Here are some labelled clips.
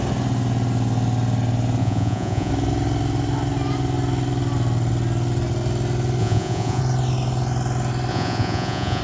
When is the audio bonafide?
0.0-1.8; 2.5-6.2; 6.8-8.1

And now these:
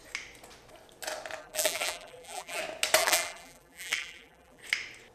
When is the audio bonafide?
0.0-1.4; 2.6-3.0; 4.6-5.1

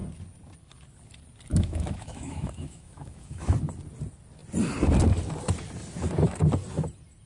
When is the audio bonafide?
0.0-1.5; 3.5-7.3

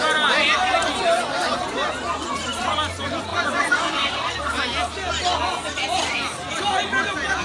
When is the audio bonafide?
0.0-3.3; 4.1-7.4

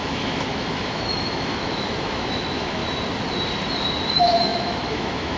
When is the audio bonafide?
2.8-4.1

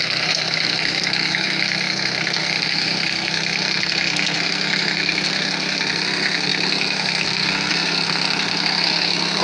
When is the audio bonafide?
none